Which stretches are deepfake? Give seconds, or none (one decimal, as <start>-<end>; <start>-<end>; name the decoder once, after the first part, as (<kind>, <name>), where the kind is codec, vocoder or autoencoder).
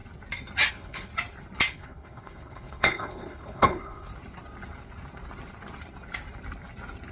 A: 0.7-1.1 (codec, HILCodec); 1.7-4.1